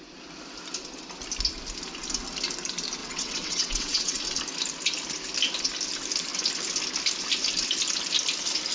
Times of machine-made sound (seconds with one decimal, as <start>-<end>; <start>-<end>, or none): 3.0-4.2

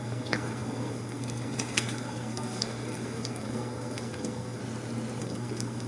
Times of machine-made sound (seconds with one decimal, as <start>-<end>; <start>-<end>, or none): 0.0-4.6; 5.2-5.9